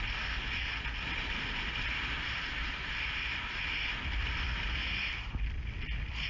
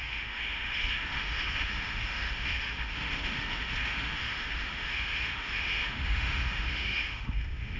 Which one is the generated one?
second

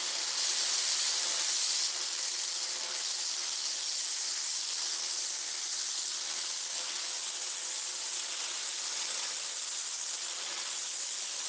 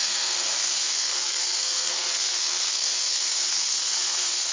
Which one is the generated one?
second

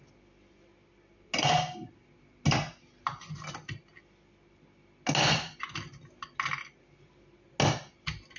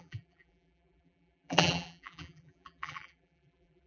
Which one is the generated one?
second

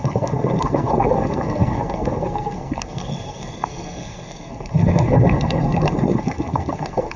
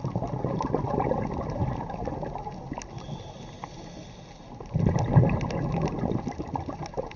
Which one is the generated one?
first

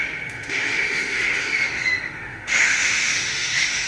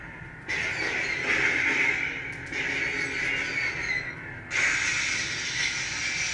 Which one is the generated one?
first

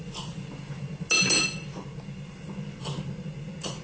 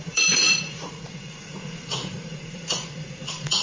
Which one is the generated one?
second